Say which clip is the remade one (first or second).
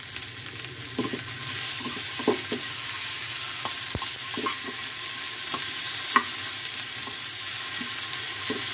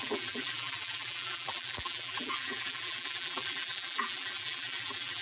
second